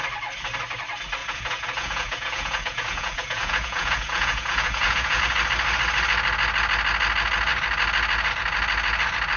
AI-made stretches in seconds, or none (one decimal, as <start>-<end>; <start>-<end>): 1.2-5.2